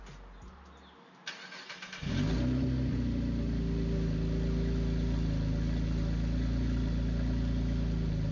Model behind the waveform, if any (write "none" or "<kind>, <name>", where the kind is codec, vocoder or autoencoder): none